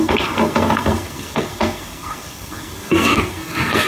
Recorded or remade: remade